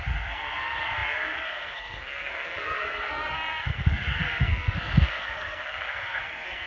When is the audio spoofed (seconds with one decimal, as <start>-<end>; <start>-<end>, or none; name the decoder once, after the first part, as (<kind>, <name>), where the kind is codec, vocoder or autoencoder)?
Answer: 0.0-6.7 (codec, SNAC)